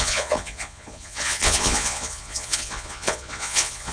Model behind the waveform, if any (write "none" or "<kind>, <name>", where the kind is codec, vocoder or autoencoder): vocoder, Vocos